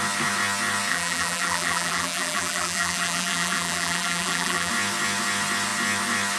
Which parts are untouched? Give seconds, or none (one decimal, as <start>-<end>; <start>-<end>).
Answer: 0.0-0.9; 4.7-6.4